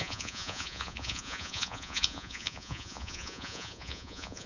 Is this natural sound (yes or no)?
no